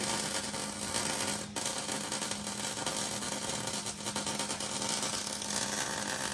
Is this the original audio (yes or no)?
yes